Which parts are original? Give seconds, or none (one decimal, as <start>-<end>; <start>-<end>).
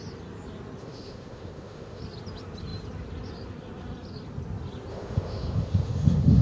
0.0-0.8; 2.0-4.9